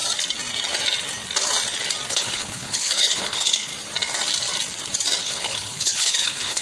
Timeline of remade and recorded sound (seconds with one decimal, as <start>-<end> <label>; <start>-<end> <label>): 0.0-2.1 recorded; 2.1-3.7 remade; 3.7-5.2 recorded; 5.2-6.6 remade